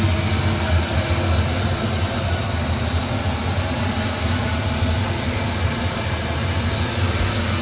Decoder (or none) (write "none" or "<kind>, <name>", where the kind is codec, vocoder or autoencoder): none